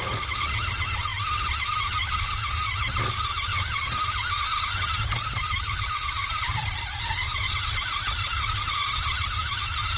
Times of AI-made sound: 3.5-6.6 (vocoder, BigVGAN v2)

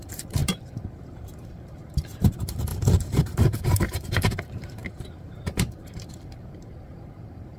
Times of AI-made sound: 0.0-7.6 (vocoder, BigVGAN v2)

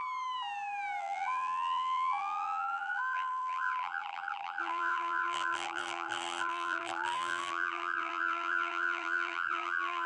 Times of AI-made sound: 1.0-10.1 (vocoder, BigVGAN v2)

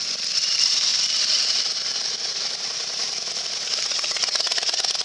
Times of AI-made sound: 0.9-3.5 (vocoder, BigVGAN v2)

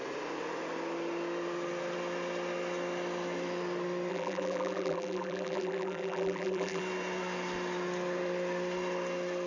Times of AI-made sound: 4.1-6.8 (vocoder, BigVGAN v2)